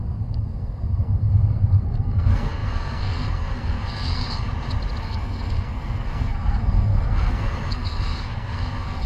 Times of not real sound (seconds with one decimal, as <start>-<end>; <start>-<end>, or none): 0.0-4.5; 5.0-9.1